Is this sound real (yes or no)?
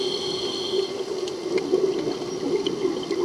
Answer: yes